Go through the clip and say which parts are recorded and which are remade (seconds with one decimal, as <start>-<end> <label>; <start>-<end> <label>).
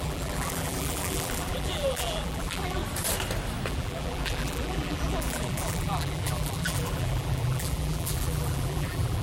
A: 0.0-2.8 remade; 2.8-3.7 recorded; 3.7-9.2 remade